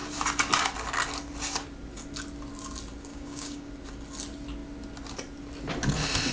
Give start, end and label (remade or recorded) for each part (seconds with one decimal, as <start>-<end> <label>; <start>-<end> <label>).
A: 0.0-3.1 recorded; 3.1-3.7 remade; 3.7-6.3 recorded